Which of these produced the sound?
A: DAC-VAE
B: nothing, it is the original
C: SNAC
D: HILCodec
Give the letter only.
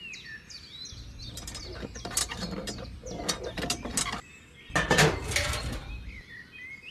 B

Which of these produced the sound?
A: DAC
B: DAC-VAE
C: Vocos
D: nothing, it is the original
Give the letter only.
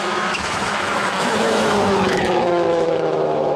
B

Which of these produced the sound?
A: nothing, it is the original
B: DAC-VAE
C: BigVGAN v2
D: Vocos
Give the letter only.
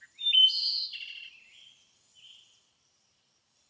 C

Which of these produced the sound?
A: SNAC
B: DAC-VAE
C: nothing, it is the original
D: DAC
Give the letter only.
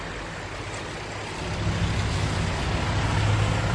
C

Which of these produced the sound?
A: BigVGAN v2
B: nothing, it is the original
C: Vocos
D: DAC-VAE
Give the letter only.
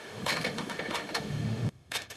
D